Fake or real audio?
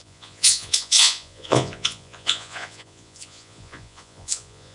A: fake